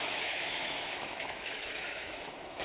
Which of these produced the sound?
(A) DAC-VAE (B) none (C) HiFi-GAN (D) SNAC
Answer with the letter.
A